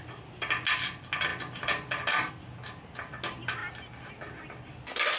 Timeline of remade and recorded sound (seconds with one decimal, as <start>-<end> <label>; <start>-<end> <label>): 0.0-5.2 recorded